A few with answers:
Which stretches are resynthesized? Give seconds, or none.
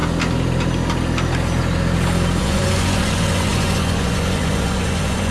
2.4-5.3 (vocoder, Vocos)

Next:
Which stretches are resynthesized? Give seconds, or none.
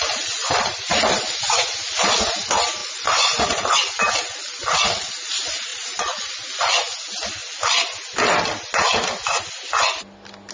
2.8-4.0 (vocoder, Vocos); 5.7-6.3